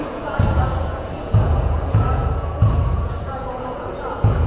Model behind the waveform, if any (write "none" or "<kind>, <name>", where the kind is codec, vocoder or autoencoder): vocoder, Vocos